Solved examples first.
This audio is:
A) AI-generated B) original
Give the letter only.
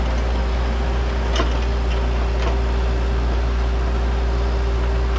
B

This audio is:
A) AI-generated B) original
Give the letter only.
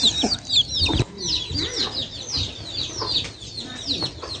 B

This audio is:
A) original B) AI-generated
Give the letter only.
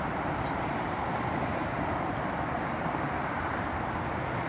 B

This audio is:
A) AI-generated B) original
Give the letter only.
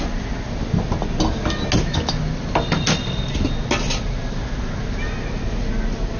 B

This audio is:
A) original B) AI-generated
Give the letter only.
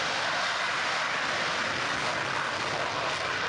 B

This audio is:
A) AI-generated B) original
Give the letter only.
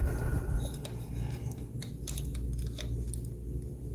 B